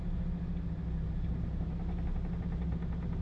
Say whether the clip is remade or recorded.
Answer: recorded